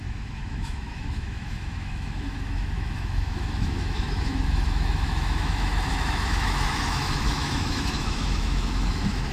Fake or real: fake